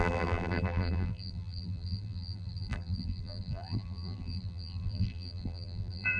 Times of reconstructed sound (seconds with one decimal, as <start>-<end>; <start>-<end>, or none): 0.0-6.2